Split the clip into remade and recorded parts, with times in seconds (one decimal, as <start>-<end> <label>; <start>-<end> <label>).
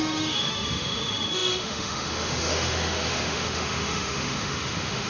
0.0-5.1 remade